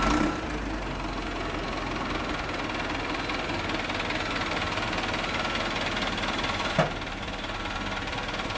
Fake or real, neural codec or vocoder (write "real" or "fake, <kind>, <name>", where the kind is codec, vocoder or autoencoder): real